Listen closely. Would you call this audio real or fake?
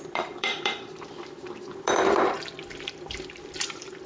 fake